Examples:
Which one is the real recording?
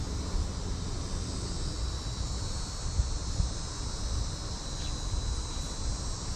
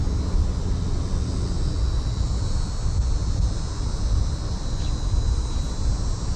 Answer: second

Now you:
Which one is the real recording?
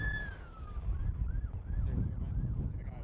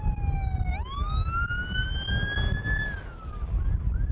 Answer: second